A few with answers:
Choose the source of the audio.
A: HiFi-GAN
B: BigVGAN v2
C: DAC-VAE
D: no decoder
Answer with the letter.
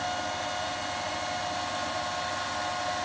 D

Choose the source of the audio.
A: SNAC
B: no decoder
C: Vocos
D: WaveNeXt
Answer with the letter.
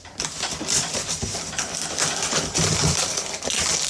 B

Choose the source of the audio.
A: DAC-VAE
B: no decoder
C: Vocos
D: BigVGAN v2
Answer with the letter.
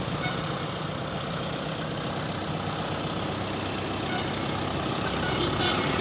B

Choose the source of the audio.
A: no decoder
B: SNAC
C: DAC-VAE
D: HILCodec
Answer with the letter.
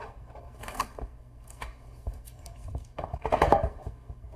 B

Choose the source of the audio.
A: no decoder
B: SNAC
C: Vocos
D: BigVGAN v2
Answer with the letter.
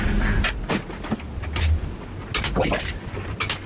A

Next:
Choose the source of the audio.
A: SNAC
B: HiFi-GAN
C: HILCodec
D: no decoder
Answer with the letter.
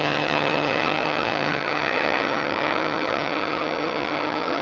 B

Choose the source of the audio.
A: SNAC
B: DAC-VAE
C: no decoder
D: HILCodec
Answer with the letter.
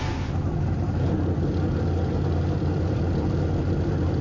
C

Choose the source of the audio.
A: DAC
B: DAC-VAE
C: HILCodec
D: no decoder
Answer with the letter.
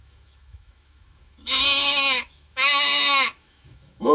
B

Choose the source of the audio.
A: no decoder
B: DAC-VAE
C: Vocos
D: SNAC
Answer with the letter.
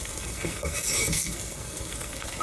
D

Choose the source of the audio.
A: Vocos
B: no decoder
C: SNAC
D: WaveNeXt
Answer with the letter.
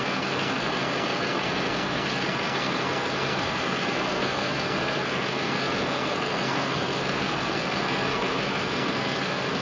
C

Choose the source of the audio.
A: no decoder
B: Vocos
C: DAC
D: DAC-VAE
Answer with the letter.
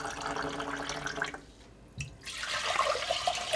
A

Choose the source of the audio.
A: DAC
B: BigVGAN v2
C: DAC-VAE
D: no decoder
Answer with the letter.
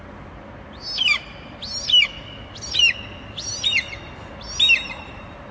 D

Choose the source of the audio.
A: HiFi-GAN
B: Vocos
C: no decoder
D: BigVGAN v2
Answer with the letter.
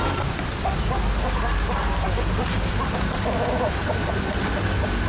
C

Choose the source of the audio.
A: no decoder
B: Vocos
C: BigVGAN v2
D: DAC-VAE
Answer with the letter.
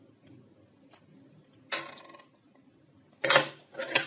A